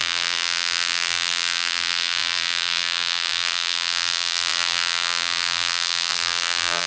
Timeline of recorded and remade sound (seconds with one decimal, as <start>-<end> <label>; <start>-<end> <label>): 0.0-6.9 remade